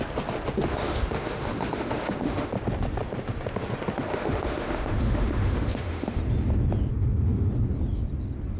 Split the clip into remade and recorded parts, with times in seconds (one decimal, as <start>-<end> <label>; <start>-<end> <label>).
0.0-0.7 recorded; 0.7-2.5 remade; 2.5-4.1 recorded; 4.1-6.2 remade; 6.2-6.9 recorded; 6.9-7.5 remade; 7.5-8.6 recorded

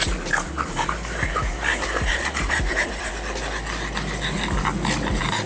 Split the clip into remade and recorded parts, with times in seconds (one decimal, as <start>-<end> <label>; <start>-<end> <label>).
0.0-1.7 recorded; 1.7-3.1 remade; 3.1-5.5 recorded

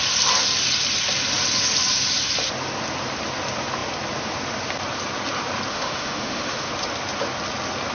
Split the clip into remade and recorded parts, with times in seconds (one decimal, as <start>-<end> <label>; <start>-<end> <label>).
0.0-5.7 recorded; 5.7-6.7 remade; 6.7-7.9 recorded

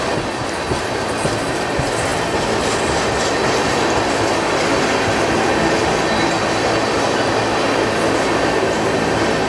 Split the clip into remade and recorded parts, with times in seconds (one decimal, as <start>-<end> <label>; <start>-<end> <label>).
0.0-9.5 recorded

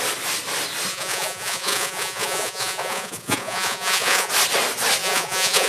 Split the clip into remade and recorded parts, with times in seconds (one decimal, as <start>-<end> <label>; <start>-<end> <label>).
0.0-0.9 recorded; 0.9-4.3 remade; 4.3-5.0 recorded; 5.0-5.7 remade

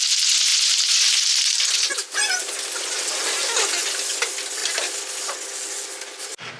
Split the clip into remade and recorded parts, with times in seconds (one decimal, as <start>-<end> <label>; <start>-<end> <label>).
0.0-6.6 recorded